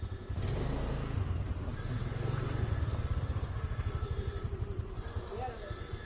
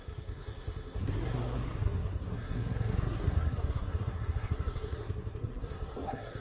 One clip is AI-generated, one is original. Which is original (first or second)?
first